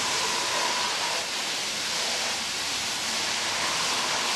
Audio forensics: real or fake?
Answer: real